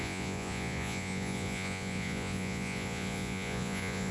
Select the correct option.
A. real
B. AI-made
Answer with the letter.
B